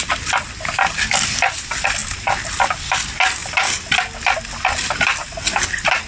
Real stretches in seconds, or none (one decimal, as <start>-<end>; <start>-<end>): 0.0-2.0; 2.9-6.1